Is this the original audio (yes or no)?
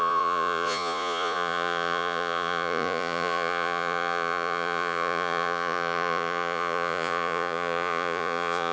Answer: no